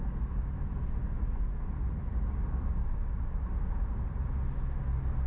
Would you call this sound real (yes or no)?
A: yes